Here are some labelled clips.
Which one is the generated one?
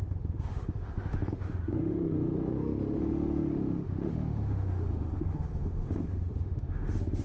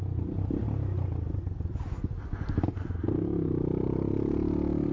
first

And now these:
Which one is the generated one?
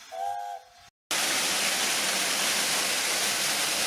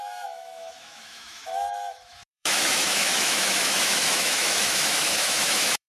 second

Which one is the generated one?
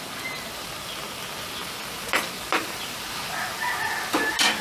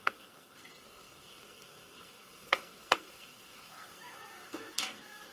second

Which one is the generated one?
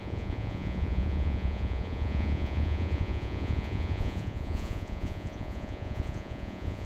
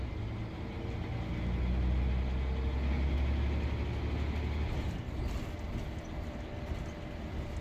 first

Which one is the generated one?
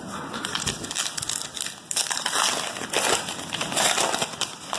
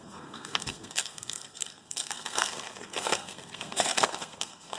second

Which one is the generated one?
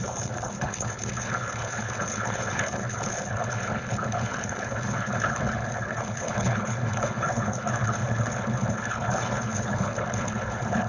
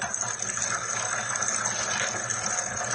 first